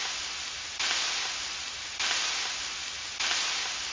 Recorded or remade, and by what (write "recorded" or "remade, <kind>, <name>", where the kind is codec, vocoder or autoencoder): recorded